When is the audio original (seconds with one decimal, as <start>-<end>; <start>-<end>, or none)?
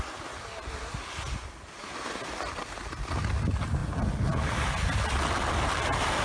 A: 0.0-6.2